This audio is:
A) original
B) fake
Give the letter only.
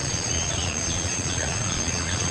B